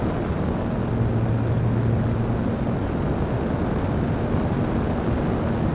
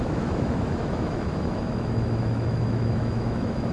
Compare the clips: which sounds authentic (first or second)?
first